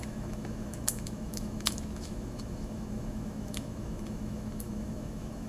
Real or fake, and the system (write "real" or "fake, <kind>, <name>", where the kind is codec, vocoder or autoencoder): fake, autoencoder, DAC-VAE